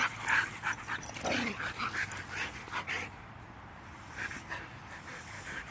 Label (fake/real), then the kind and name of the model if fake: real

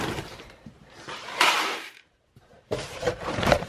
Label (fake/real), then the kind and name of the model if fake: fake, vocoder, BigVGAN v2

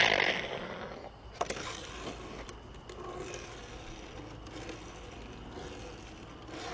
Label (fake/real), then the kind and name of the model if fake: real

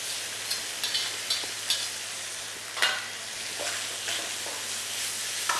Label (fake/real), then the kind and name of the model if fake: real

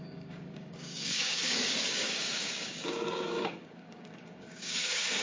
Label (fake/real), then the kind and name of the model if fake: fake, codec, DAC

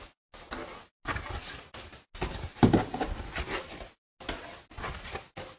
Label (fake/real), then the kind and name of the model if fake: real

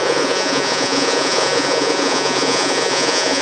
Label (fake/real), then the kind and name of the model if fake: fake, vocoder, Vocos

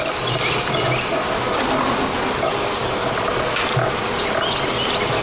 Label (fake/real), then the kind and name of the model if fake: real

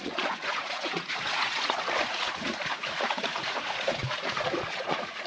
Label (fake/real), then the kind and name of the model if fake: fake, vocoder, Vocos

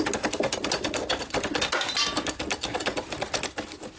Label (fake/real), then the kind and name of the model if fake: real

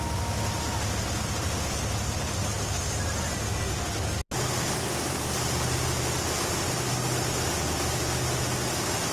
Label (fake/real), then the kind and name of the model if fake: real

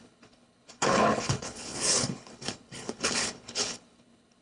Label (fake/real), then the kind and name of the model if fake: fake, codec, HILCodec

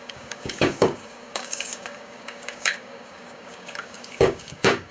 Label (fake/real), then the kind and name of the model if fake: fake, codec, DAC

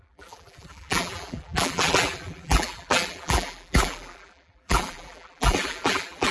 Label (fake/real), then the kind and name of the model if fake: fake, vocoder, BigVGAN v2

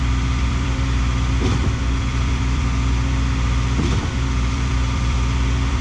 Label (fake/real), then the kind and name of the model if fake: fake, vocoder, BigVGAN v2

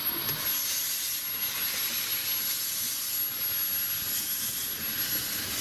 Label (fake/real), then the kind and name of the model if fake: real